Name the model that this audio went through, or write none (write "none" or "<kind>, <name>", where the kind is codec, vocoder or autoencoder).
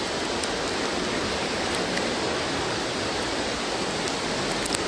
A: none